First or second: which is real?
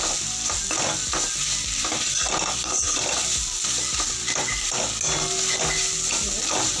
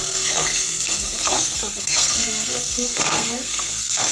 first